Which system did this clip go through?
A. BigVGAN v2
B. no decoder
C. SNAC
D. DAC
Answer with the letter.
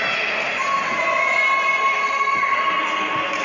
B